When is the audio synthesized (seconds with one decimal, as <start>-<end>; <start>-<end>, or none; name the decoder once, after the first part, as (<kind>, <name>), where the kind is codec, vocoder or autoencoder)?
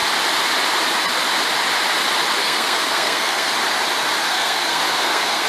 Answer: 2.4-3.5 (codec, SNAC); 4.3-5.5